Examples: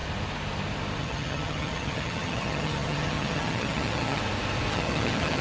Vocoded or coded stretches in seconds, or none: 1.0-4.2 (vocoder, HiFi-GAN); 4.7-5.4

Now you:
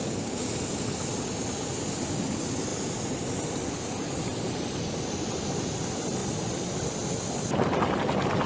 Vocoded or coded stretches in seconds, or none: 0.0-0.5 (codec, DAC)